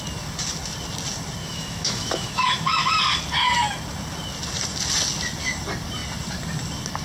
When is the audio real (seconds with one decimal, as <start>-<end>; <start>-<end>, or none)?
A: 0.0-1.4; 2.9-7.0